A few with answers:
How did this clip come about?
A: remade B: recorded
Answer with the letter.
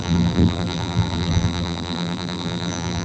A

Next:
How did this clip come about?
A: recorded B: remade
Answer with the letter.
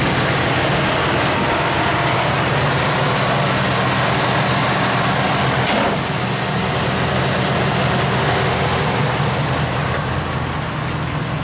A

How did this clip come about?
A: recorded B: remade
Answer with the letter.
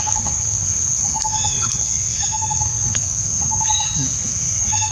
B